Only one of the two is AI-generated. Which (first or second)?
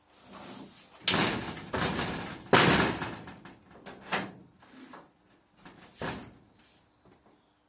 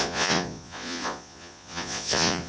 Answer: second